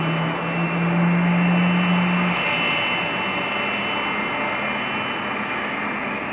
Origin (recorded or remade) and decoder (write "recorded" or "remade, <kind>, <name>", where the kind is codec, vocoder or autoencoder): recorded